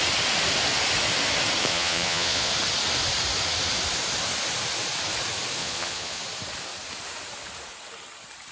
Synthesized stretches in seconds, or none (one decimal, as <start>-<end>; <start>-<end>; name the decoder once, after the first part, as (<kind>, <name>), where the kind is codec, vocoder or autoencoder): 1.6-2.5 (vocoder, Vocos); 5.6-6.2